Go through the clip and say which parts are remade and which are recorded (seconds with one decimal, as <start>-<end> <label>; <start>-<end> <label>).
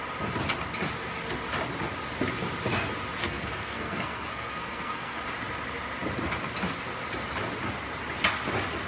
0.0-3.2 recorded; 3.2-5.2 remade; 5.2-8.9 recorded